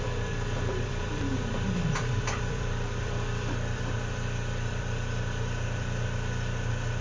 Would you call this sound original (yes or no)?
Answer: no